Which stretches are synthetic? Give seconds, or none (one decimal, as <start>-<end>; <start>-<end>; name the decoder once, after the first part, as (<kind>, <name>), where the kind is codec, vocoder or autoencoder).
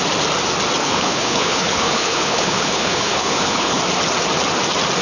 0.8-3.8 (codec, HILCodec)